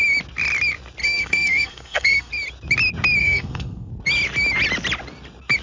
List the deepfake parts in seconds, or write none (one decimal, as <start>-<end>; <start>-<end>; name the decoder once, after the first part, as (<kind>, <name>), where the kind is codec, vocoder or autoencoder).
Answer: 1.0-2.3 (codec, SNAC); 3.2-3.9